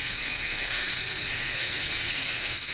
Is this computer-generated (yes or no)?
yes